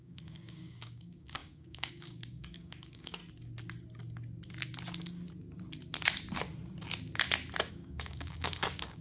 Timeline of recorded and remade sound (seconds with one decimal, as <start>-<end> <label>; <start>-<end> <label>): 0.0-3.2 remade; 3.2-7.7 recorded; 7.7-9.0 remade